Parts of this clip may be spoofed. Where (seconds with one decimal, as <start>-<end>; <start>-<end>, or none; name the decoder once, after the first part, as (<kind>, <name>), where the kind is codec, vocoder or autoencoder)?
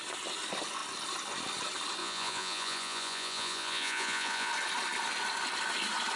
2.0-4.5 (vocoder, Vocos)